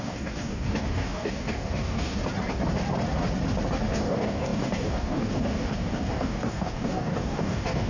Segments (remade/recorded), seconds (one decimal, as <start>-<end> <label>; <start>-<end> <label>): 0.0-2.2 remade; 2.2-3.9 recorded; 3.9-7.9 remade